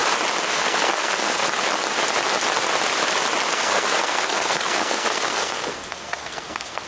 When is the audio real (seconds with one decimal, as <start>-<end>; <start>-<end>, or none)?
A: 0.0-0.5; 1.4-3.5